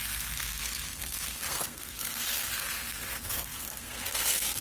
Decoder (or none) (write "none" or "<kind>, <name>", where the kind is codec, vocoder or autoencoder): codec, SNAC